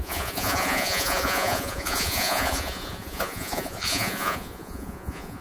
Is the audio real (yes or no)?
no